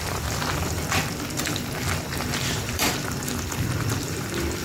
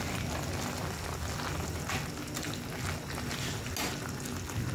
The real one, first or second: second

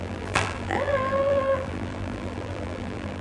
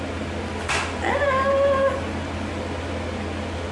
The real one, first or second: second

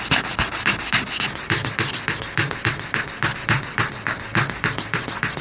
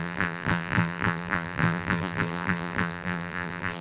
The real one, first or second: first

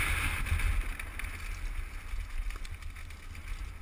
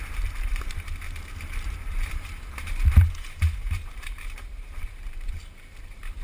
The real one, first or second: first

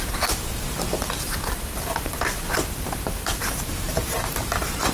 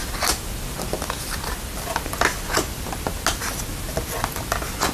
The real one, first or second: second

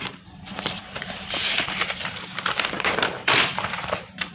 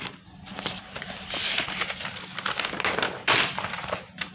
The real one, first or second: second